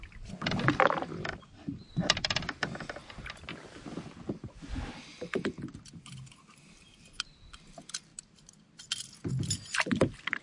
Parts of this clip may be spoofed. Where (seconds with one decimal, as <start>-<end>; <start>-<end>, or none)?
none